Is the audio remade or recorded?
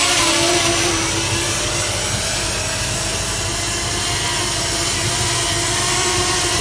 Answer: recorded